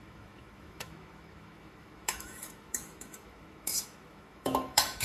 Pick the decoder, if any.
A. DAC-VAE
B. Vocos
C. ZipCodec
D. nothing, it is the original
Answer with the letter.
A